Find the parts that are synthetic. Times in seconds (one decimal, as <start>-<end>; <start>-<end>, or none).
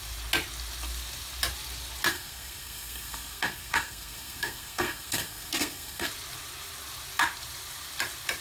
2.1-6.1